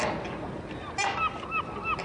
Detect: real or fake real